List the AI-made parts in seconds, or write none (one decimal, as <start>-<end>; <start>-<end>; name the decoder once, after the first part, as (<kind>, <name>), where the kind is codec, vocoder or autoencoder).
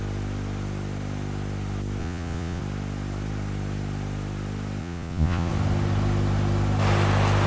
2.0-2.6 (vocoder, Vocos); 4.8-5.5